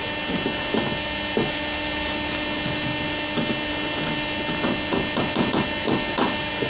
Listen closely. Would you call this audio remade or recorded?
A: recorded